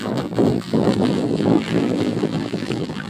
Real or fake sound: fake